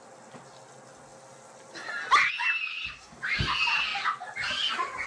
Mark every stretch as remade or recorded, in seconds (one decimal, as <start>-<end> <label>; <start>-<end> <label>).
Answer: 0.0-5.1 recorded